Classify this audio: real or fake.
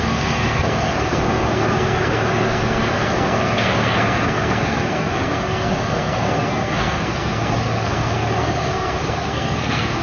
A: fake